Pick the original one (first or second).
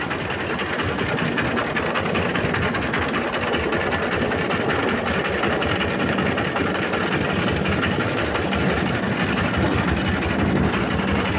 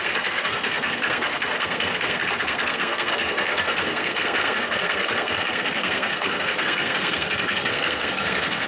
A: first